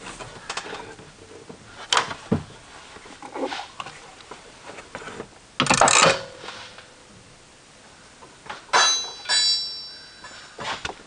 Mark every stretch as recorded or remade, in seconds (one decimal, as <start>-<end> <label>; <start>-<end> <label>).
0.0-11.1 recorded

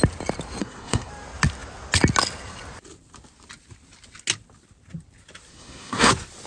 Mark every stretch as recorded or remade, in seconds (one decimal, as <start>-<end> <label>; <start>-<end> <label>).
0.0-0.6 recorded; 0.6-1.1 remade; 1.1-5.5 recorded; 5.5-6.1 remade; 6.1-6.5 recorded